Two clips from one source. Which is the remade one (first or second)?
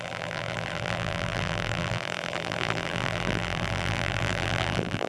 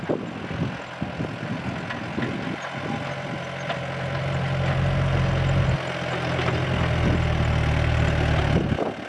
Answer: first